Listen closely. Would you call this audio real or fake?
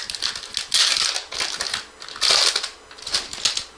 real